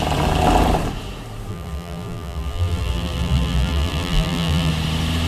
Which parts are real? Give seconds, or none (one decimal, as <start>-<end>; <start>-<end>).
0.0-1.5; 4.7-5.3